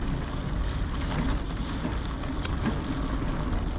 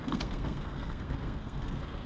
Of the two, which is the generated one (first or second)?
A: second